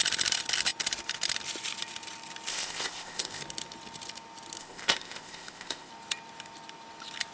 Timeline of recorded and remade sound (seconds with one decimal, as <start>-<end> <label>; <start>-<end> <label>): 0.0-2.5 recorded; 2.5-3.4 remade; 3.4-4.6 recorded; 4.6-5.9 remade; 5.9-7.3 recorded